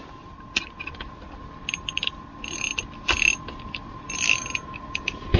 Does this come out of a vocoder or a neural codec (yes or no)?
no